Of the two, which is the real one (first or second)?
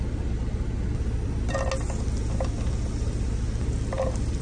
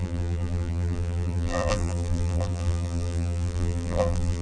first